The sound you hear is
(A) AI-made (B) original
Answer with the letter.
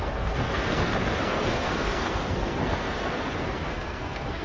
A